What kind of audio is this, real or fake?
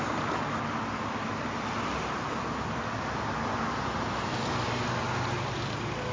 real